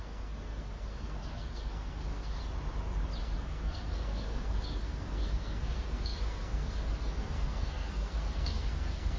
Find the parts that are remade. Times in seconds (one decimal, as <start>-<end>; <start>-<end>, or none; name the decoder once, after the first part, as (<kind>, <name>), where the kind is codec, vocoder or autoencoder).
0.0-2.4 (codec, SNAC); 3.2-9.2